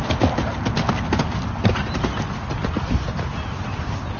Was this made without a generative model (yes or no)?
yes